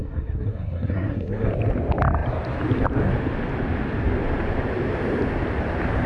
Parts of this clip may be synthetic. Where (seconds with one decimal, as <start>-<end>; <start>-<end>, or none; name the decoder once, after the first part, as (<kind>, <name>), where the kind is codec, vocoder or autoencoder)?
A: 0.0-1.5 (codec, SNAC)